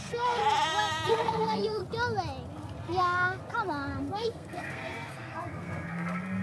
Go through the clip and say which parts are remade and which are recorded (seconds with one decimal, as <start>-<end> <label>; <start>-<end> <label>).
0.0-0.4 remade; 0.4-1.1 recorded; 1.1-1.8 remade; 1.8-3.0 recorded; 3.0-3.4 remade; 3.4-4.0 recorded; 4.0-6.4 remade